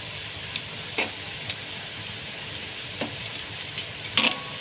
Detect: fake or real real